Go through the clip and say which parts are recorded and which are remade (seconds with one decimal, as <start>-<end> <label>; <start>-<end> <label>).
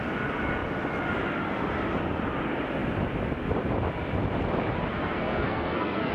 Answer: 0.0-4.9 recorded; 4.9-6.1 remade